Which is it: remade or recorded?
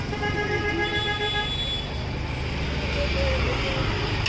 recorded